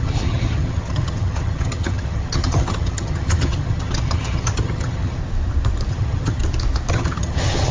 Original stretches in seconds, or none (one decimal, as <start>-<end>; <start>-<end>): 5.2-5.9; 6.4-6.9